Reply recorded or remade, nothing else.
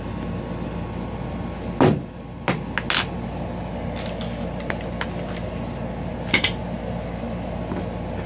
recorded